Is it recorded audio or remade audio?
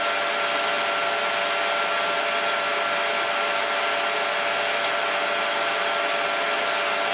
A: recorded